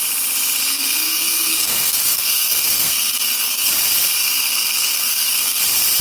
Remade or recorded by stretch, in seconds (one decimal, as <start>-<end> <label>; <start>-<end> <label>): 0.0-0.7 recorded; 0.7-3.7 remade; 3.7-4.2 recorded; 4.2-5.6 remade; 5.6-6.0 recorded